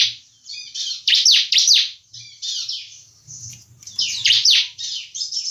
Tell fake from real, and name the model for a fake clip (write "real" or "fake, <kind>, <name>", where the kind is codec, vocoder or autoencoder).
fake, vocoder, BigVGAN v2